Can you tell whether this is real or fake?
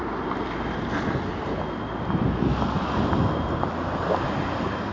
real